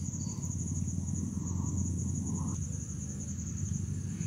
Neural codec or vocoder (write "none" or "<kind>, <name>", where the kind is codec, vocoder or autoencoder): none